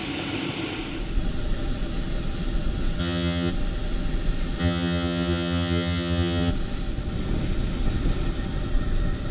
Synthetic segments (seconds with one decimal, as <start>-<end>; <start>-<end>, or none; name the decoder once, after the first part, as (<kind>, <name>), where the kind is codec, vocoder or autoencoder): 3.0-3.5 (vocoder, HiFi-GAN); 4.6-6.5